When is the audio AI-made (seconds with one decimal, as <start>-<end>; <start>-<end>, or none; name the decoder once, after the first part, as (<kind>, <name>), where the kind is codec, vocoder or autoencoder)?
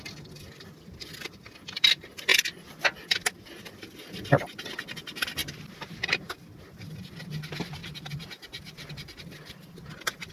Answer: 0.0-2.3 (vocoder, BigVGAN v2); 4.9-5.4; 6.1-10.3